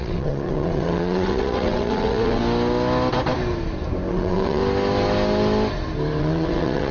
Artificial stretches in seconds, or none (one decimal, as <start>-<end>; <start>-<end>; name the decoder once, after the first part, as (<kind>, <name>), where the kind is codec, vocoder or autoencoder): 0.0-2.4 (vocoder, WaveNeXt); 4.1-4.6; 6.2-6.9